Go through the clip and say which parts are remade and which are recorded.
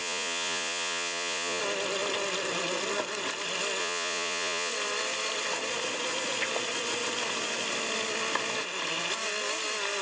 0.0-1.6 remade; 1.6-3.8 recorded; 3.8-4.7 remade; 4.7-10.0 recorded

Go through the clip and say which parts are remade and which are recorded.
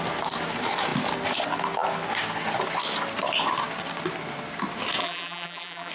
0.0-5.0 recorded; 5.0-5.9 remade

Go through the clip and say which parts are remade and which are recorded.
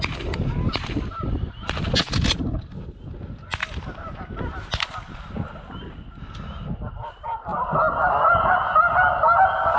0.0-9.8 recorded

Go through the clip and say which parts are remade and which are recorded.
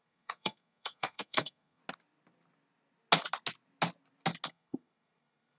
0.0-1.8 remade; 1.8-4.5 recorded; 4.5-5.6 remade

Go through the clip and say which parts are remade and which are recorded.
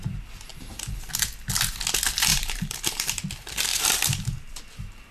0.0-0.5 recorded; 0.5-1.1 remade; 1.1-2.3 recorded; 2.3-3.2 remade; 3.2-3.7 recorded; 3.7-4.6 remade; 4.6-5.1 recorded